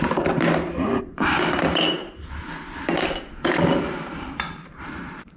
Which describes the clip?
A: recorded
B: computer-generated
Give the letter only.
B